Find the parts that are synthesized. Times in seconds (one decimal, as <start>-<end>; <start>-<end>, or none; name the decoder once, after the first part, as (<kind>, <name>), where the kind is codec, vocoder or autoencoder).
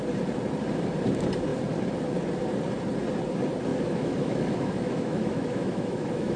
3.7-6.4 (autoencoder, DAC-VAE)